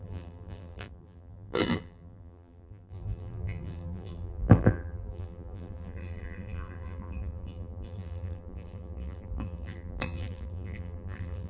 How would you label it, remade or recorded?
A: remade